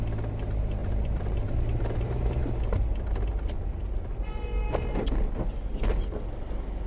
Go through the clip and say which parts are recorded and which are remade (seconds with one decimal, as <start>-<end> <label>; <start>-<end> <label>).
0.0-0.8 recorded; 0.8-2.4 remade; 2.4-6.9 recorded